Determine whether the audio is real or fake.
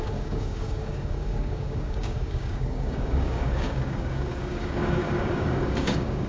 fake